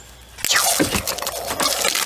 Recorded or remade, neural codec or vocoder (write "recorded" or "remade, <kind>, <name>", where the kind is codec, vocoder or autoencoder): recorded